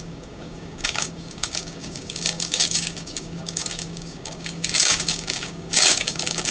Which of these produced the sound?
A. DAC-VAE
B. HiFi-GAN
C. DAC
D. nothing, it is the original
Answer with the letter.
C